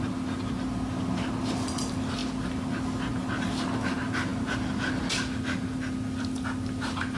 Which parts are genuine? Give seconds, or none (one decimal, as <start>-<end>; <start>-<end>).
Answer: 0.0-7.2